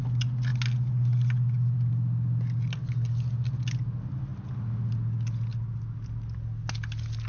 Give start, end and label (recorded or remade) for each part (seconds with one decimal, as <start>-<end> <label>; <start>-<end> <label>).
0.0-7.3 recorded